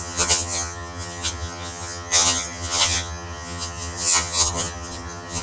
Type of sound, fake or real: fake